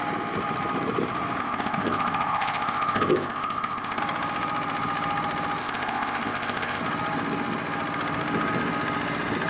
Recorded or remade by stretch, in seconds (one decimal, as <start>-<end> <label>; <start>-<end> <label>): 0.0-1.4 recorded; 1.4-4.0 remade; 4.0-5.6 recorded; 5.6-6.8 remade; 6.8-9.5 recorded